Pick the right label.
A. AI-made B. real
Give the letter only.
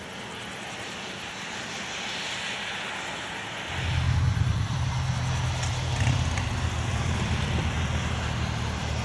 B